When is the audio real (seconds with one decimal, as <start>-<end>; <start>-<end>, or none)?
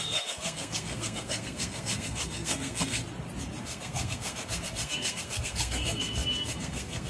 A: 3.0-3.6